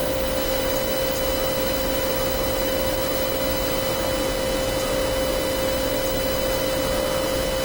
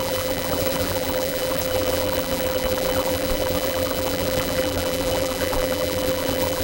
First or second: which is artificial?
second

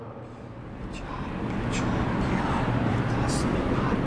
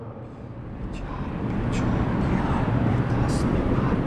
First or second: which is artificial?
second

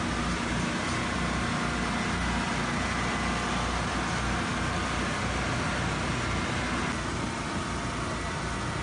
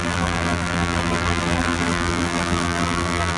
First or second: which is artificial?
second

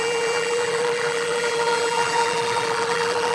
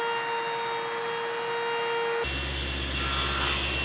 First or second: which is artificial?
first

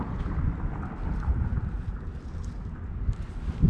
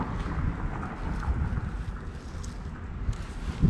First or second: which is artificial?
first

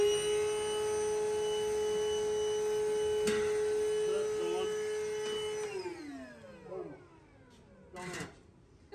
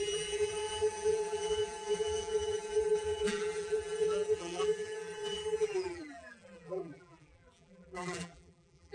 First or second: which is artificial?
second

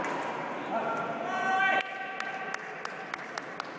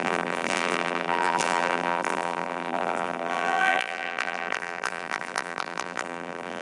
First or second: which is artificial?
second